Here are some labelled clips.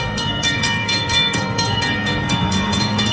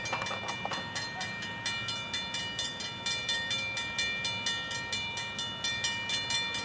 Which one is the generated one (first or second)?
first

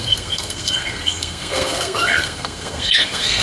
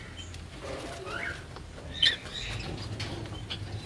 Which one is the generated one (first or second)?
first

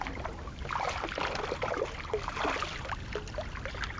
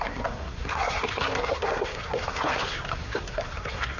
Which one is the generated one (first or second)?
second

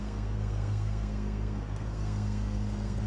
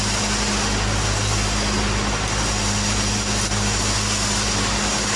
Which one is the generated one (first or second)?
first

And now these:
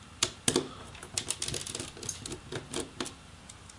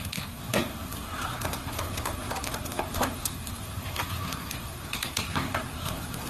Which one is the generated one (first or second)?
second